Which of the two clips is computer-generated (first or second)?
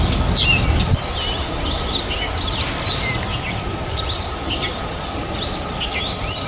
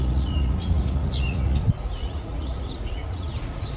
second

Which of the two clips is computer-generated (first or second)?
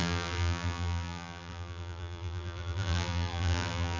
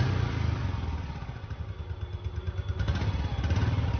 first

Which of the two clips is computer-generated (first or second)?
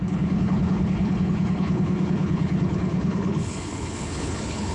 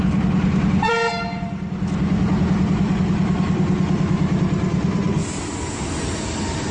first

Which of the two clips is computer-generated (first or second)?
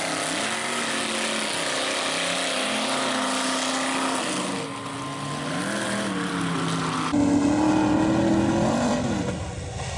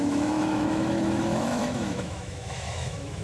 second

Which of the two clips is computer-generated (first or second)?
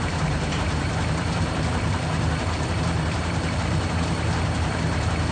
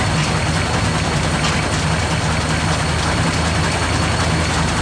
first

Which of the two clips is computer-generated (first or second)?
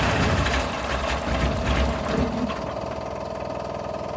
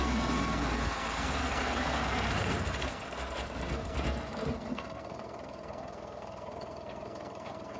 second